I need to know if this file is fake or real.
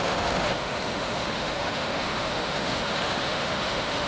fake